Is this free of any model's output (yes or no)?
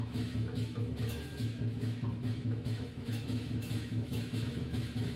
no